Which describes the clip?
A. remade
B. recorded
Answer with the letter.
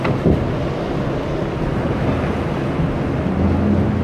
B